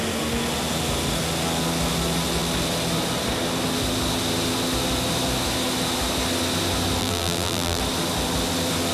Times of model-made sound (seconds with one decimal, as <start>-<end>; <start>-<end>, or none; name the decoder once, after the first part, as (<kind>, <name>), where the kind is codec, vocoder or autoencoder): 7.0-7.8 (vocoder, BigVGAN v2)